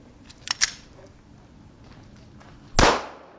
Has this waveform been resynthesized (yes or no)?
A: no